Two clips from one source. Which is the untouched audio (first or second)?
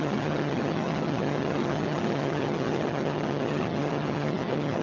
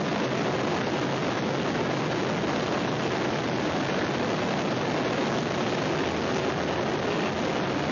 second